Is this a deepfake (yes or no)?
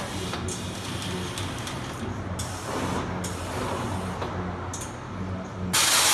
no